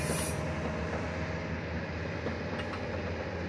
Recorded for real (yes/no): yes